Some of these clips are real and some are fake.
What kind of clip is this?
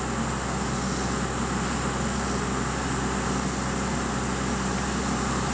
real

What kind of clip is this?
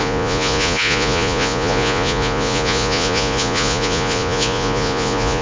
fake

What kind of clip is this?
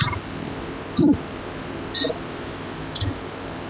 real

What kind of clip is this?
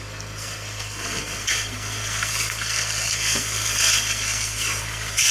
fake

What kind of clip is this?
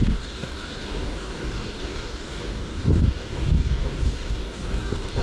fake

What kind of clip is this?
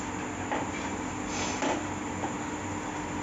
real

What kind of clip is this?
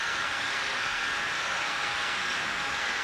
fake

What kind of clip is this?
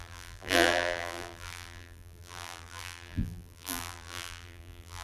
fake